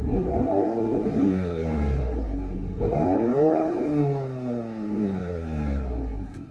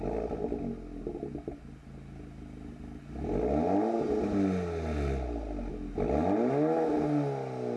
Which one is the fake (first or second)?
first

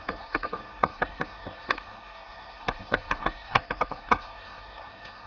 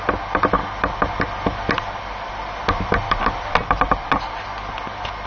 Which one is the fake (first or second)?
first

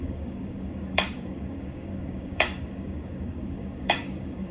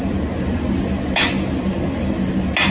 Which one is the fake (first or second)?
first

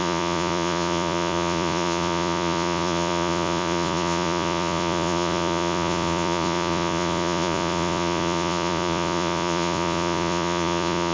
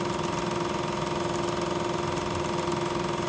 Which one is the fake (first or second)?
first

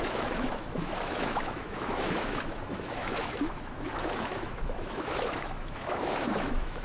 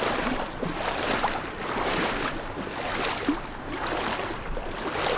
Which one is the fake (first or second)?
first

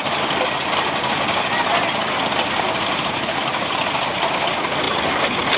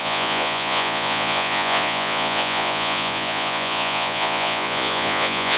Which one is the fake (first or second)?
second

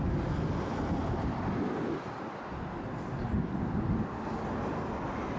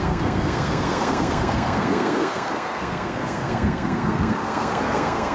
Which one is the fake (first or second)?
second